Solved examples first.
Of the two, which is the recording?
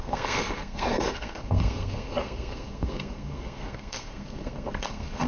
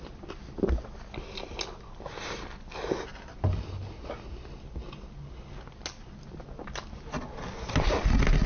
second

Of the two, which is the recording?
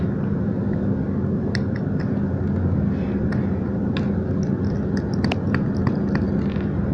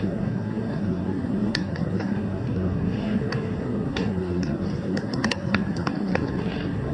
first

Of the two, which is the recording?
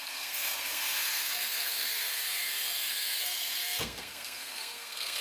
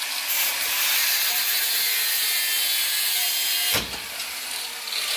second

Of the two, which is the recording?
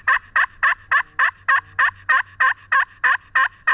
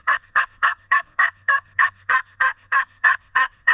first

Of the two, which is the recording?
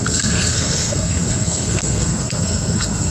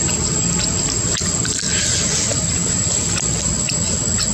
second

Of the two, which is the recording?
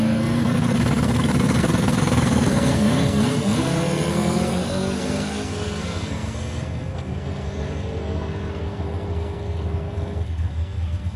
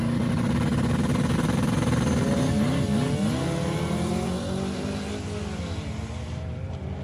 second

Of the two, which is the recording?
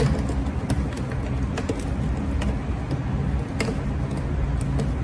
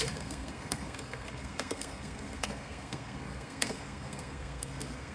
first